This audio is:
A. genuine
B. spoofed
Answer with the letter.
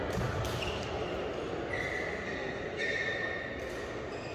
A